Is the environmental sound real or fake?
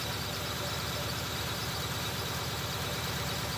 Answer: fake